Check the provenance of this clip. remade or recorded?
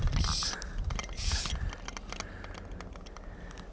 recorded